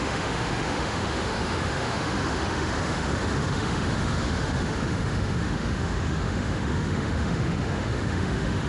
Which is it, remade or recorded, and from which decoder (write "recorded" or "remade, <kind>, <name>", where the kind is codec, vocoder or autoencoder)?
remade, autoencoder, DAC-VAE